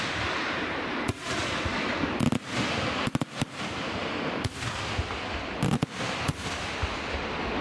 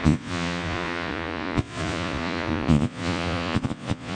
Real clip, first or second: first